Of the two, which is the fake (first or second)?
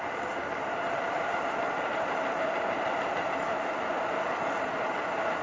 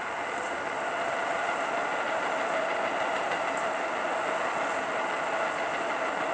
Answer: first